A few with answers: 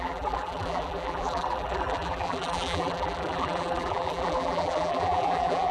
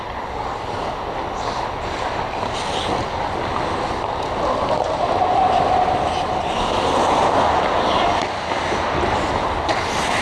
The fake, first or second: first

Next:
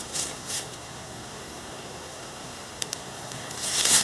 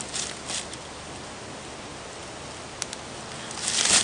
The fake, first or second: first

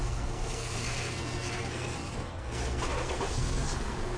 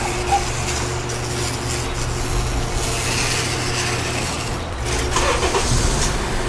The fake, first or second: first